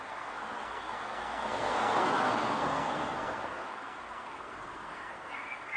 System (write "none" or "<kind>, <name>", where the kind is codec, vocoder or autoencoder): codec, SNAC